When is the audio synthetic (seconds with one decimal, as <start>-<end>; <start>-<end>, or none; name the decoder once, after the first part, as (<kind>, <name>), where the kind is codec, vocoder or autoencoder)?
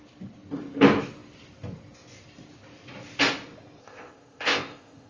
3.8-5.1 (codec, ZipCodec)